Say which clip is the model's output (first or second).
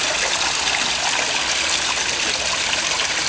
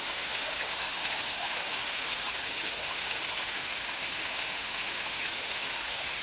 second